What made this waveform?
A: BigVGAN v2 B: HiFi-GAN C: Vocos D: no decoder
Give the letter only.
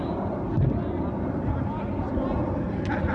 D